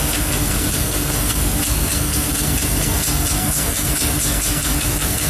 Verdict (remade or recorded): remade